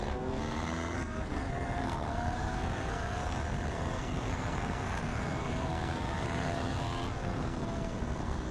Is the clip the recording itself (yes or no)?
no